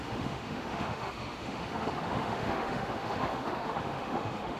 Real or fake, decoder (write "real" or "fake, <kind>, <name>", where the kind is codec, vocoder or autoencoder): fake, autoencoder, DAC-VAE